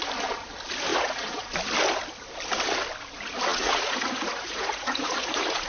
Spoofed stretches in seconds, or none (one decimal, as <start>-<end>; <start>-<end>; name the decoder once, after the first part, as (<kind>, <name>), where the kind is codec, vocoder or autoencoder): 0.9-1.5 (vocoder, Vocos); 3.5-5.7